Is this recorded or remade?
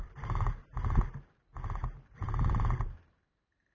remade